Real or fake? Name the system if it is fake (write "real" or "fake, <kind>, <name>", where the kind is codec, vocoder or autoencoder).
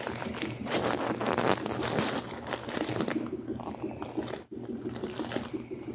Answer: fake, vocoder, BigVGAN v2